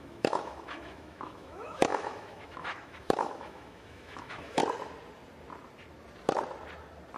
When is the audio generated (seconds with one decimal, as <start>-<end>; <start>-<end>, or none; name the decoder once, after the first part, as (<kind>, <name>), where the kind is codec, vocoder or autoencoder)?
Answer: 0.0-4.6 (autoencoder, DAC-VAE)

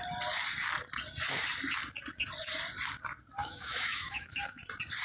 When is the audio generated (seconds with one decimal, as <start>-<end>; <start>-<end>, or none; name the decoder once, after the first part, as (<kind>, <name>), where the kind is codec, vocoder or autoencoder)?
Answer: 3.4-4.6 (autoencoder, DAC-VAE)

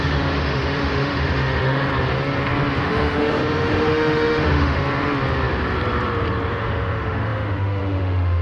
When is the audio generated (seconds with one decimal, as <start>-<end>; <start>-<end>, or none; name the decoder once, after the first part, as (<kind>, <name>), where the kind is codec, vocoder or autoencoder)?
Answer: 0.0-1.9 (autoencoder, DAC-VAE); 2.8-4.8; 6.5-8.4

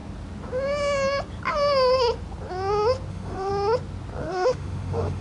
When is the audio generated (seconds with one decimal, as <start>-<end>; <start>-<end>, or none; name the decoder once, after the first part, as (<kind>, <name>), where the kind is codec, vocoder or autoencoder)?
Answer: 3.1-3.5 (autoencoder, DAC-VAE); 4.2-5.2

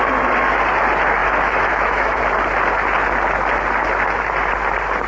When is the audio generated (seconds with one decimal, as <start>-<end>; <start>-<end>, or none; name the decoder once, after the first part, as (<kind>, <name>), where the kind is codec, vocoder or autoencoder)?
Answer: 1.2-2.2 (autoencoder, DAC-VAE)